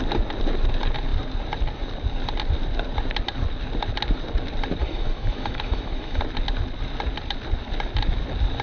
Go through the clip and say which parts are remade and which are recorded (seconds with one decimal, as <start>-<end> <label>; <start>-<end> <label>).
0.0-4.8 recorded; 4.8-6.2 remade; 6.2-8.6 recorded